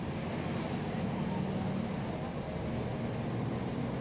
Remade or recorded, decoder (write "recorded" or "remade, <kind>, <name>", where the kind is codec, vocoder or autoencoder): recorded